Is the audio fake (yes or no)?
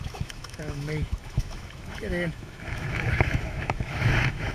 yes